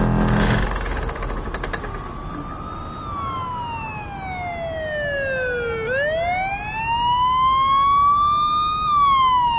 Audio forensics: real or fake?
real